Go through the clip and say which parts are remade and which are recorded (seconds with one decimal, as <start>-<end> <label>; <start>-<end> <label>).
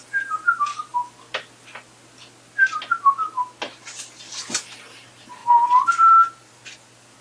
0.0-7.2 recorded